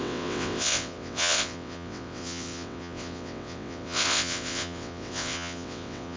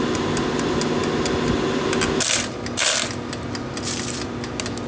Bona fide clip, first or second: second